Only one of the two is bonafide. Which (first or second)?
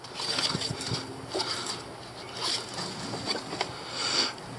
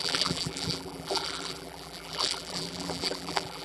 first